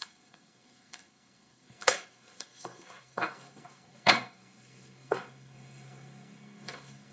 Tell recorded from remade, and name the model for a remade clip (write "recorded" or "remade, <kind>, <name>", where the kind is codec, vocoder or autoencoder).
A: remade, codec, SNAC